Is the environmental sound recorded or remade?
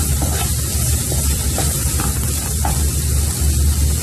recorded